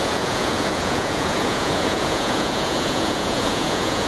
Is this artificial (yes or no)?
yes